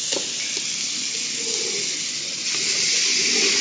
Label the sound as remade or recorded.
recorded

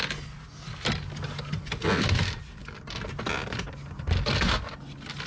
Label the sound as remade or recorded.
recorded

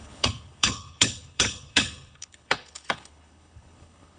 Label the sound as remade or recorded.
remade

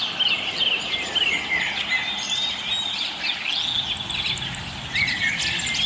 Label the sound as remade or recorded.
recorded